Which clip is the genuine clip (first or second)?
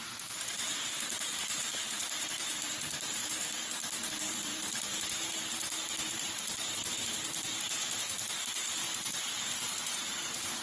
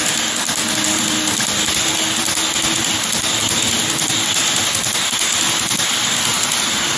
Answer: second